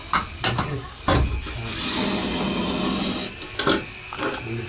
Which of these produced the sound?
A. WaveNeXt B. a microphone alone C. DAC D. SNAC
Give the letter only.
B